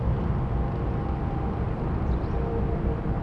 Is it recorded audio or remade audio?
recorded